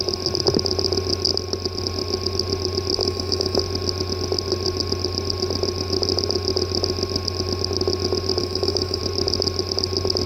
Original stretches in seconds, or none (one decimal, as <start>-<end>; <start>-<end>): 0.0-3.0; 3.6-8.4; 9.0-10.3